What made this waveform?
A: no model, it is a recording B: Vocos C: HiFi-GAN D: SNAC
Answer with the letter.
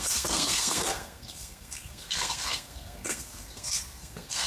D